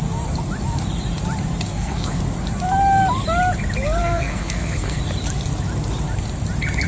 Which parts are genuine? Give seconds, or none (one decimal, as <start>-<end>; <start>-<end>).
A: 0.0-1.7; 2.2-4.0; 5.0-6.9